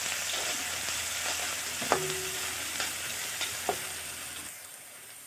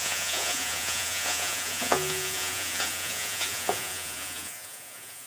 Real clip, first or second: first